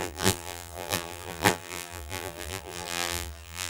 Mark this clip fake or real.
fake